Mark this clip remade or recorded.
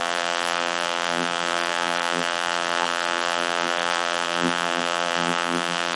remade